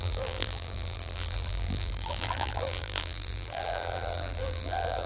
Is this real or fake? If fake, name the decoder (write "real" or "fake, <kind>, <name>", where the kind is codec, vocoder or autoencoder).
fake, vocoder, BigVGAN v2